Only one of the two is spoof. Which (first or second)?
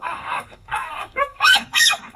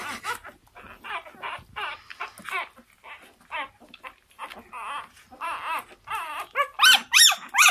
first